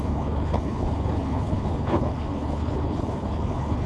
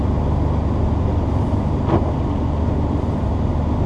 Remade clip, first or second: first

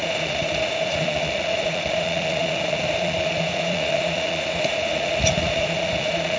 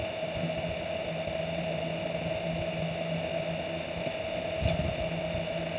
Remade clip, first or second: first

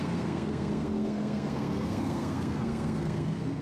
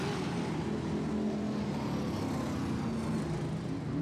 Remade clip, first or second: first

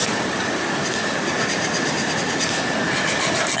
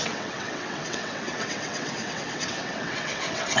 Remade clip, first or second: second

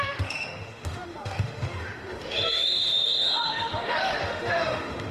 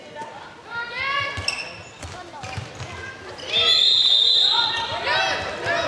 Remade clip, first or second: first